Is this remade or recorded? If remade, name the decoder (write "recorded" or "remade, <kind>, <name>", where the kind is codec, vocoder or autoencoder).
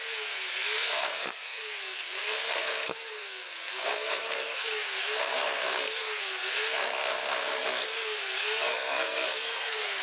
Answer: remade, codec, SNAC